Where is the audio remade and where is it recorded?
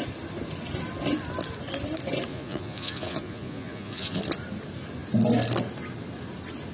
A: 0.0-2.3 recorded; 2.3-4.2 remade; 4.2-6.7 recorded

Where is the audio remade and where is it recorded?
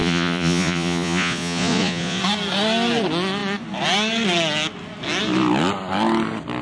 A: 0.0-2.2 remade; 2.2-6.6 recorded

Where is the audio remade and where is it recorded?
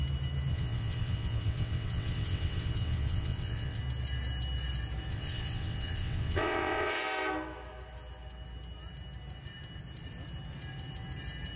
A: 0.0-0.5 recorded; 0.5-3.8 remade; 3.8-5.1 recorded; 5.1-7.0 remade; 7.0-11.6 recorded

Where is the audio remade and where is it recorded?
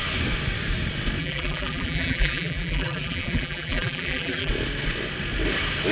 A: 0.0-1.2 recorded; 1.2-4.5 remade; 4.5-5.9 recorded